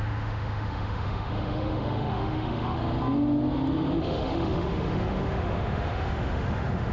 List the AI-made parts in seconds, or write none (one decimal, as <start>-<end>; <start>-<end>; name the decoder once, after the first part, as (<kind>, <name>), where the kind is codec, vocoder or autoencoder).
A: 0.0-2.8 (autoencoder, DAC-VAE); 4.0-6.9